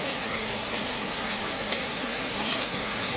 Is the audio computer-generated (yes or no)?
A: yes